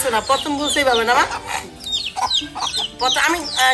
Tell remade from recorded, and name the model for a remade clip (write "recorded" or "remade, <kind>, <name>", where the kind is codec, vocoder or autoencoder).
recorded